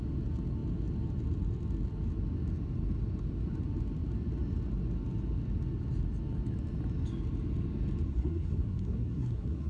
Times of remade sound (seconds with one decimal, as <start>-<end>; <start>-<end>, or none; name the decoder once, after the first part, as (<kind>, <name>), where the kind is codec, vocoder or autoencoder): 8.1-9.7 (codec, SNAC)